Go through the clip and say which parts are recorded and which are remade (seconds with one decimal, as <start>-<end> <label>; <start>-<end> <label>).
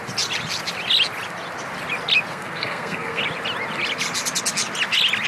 0.0-2.3 recorded; 2.3-3.2 remade; 3.2-5.3 recorded